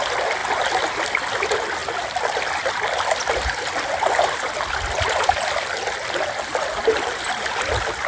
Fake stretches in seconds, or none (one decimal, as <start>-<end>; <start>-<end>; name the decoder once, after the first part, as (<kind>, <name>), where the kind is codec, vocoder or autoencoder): none

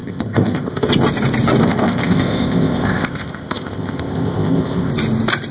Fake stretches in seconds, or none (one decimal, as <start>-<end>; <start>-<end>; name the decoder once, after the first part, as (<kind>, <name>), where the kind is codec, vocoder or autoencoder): 0.0-0.9 (codec, ZipCodec); 1.6-4.9

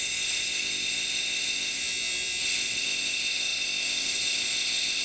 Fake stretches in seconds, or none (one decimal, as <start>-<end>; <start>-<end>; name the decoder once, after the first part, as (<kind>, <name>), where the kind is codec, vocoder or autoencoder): 0.0-1.8 (codec, ZipCodec); 2.4-5.0

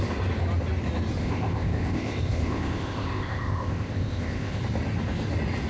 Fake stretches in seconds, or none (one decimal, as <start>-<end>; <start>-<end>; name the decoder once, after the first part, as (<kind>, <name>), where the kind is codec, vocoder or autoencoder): 1.2-4.6 (codec, ZipCodec)

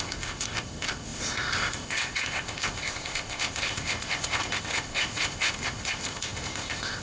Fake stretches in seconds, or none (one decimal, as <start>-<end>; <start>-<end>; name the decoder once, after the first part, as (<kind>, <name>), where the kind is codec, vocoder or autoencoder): 0.0-7.0 (codec, ZipCodec)

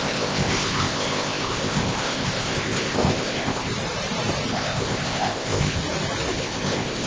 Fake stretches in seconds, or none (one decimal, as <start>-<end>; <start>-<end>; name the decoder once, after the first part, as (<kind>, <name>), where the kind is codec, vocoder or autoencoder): 0.0-3.7 (codec, ZipCodec); 4.5-5.8; 6.3-7.1